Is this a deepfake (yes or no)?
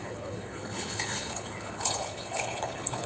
yes